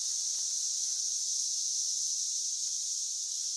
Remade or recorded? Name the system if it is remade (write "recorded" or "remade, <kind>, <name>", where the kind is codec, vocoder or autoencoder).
recorded